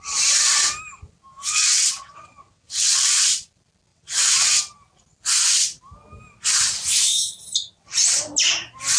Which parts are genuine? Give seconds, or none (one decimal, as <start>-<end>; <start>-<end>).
0.0-1.4; 3.2-3.9; 4.6-9.0